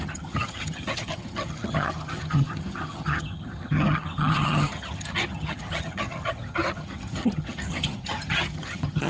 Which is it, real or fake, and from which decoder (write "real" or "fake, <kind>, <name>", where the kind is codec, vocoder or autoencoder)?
fake, vocoder, HiFi-GAN